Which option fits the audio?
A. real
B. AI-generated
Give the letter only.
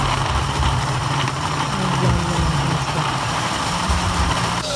B